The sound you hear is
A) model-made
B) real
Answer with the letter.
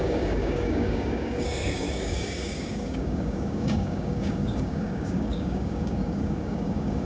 A